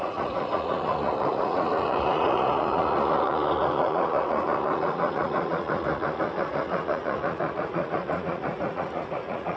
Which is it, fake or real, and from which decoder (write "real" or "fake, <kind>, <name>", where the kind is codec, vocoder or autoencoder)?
fake, vocoder, Vocos